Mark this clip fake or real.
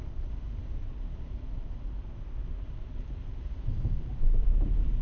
fake